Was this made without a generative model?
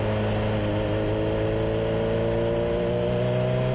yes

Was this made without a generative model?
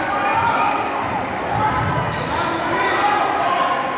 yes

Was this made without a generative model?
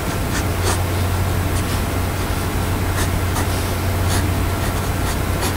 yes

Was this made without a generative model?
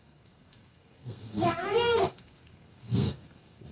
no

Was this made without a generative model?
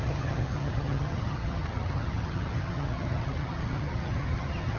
no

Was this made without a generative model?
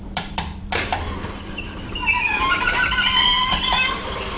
no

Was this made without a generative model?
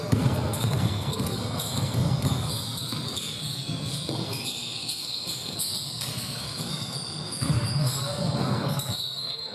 no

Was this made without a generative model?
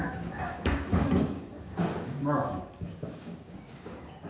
no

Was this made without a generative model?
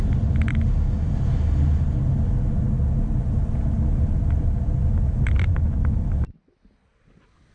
yes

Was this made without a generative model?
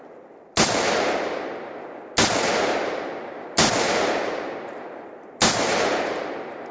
yes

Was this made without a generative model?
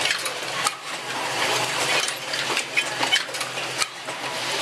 yes